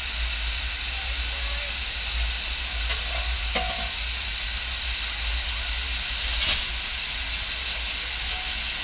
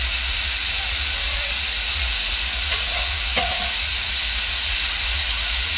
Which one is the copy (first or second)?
second